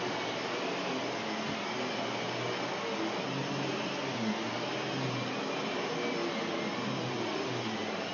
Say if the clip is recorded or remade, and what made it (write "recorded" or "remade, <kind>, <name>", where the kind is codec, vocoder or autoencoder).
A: recorded